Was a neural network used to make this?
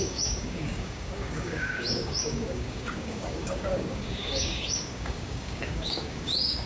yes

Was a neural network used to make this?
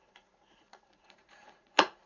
yes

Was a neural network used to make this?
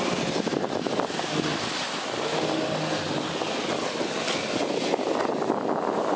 no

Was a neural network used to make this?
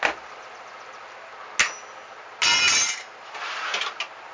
no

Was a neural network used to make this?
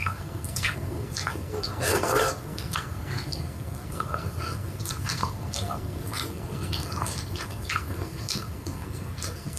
yes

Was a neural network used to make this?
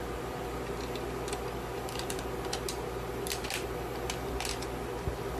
no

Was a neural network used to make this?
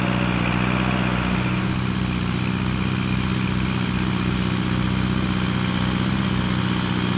no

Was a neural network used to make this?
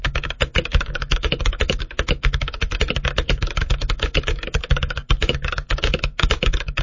yes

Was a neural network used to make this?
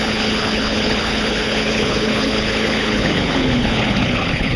yes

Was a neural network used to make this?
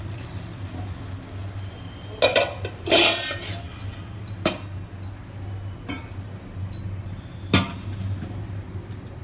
no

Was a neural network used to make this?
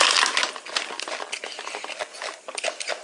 no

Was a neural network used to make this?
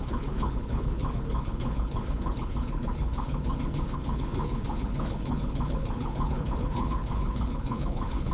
yes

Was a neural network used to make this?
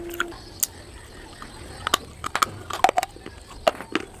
no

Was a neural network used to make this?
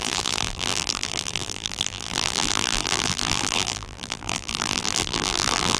yes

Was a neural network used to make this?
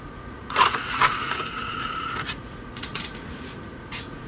yes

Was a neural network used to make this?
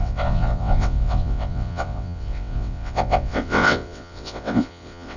yes